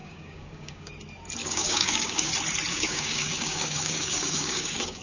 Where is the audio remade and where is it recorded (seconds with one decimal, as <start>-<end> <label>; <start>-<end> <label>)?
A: 0.0-0.9 remade; 0.9-1.4 recorded; 1.4-2.3 remade; 2.3-2.7 recorded; 2.7-5.0 remade